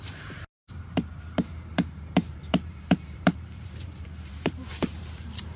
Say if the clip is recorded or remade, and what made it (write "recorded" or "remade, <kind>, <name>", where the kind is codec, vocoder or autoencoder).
remade, vocoder, BigVGAN v2